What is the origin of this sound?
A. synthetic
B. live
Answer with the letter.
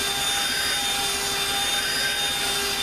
B